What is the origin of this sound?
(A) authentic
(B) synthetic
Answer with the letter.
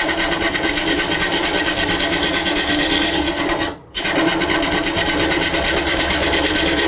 B